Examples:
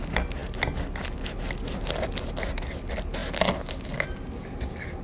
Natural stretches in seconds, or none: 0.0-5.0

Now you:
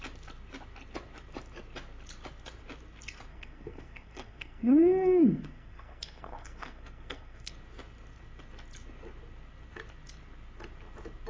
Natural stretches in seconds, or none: 0.0-3.3; 7.5-11.3

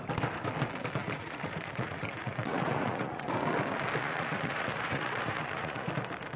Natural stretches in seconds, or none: 0.0-1.0; 3.3-4.0; 5.9-6.4

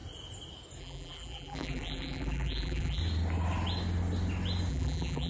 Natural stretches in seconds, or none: 0.0-0.8; 3.0-4.7

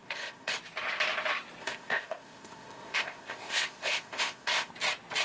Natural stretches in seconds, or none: 0.5-1.6; 4.7-5.2

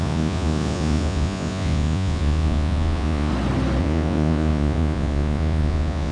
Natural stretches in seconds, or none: 3.3-3.8

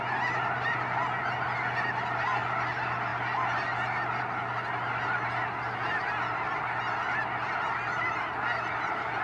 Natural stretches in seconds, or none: 0.0-9.2